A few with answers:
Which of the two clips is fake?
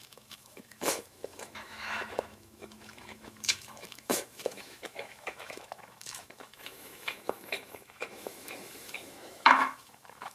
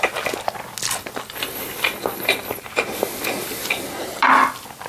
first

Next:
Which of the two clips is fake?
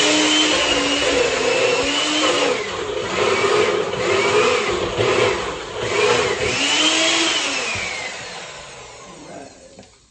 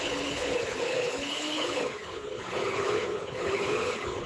second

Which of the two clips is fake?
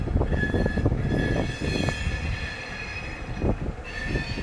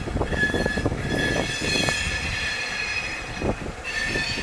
second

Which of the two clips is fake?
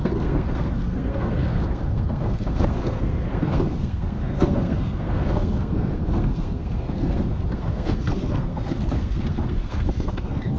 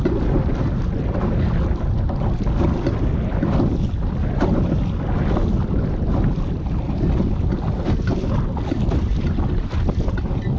first